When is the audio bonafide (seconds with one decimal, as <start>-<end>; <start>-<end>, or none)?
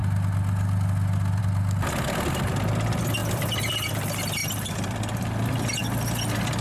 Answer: 0.0-3.2; 3.9-4.4; 5.4-6.6